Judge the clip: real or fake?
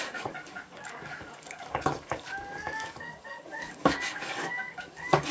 fake